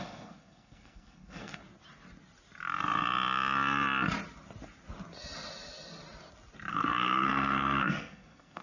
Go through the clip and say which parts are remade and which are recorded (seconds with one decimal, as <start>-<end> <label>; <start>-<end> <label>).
0.0-1.6 remade; 1.6-6.7 recorded; 6.7-8.6 remade